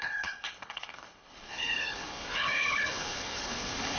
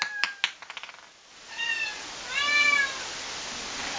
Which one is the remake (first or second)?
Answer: first